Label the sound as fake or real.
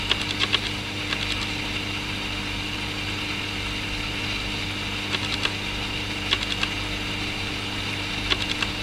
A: real